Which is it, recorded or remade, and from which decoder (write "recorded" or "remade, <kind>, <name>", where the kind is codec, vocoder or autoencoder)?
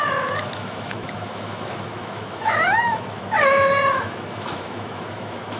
remade, autoencoder, DAC-VAE